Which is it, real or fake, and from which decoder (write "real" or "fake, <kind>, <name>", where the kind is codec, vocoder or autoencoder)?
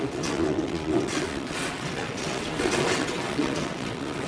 fake, vocoder, WaveNeXt